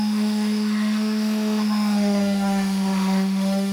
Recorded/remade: remade